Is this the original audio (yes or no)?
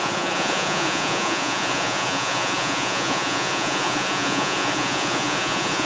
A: no